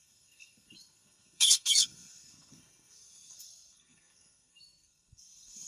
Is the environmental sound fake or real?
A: fake